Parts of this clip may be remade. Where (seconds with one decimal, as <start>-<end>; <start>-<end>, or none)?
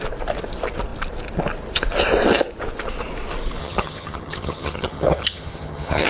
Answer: 3.6-6.1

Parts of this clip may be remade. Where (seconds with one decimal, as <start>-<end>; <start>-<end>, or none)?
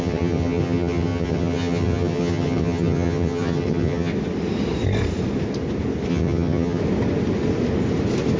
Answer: 0.0-4.1; 6.1-6.8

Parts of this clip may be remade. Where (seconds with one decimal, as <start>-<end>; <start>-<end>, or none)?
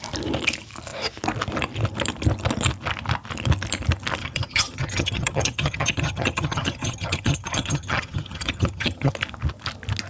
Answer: 4.2-9.1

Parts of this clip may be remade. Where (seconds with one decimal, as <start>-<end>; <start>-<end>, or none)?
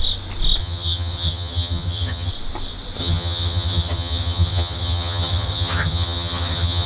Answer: 0.6-2.3; 3.0-6.9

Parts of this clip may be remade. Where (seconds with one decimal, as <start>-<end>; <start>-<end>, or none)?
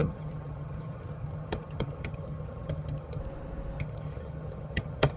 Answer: 0.0-3.2; 3.8-5.2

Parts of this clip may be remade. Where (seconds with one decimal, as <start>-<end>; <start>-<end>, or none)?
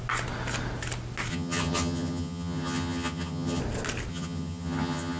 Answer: 1.3-3.6; 4.1-5.2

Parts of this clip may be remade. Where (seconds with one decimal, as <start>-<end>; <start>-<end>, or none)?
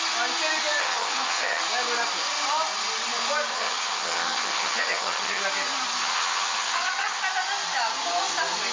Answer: 0.8-1.6; 3.5-5.4; 6.0-7.2